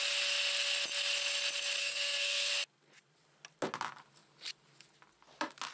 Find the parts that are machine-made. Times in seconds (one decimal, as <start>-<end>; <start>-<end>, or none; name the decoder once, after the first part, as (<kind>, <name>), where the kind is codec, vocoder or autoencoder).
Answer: 1.8-2.5 (codec, SNAC)